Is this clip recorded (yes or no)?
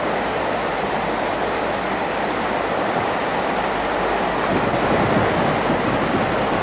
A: yes